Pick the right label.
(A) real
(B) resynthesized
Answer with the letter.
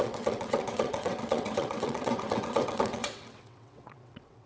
B